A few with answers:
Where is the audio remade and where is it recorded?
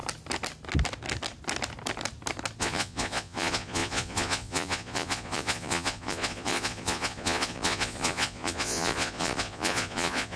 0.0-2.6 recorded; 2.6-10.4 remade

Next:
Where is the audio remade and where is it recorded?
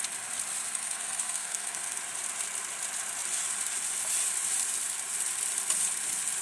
0.0-0.7 recorded; 0.7-2.0 remade; 2.0-6.4 recorded